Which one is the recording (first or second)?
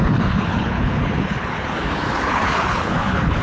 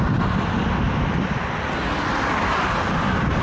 second